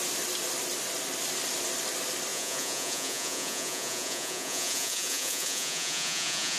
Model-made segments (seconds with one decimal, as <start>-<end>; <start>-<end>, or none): 2.3-6.6